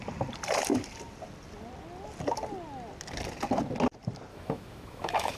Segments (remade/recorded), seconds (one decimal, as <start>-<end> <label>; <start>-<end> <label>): 0.0-4.3 recorded; 4.3-5.4 remade